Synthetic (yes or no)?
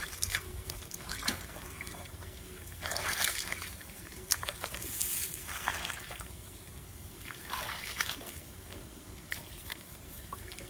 yes